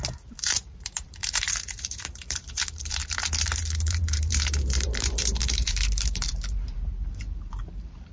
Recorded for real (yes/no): no